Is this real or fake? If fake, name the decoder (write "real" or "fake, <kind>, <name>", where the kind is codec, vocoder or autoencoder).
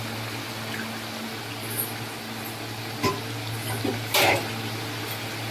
real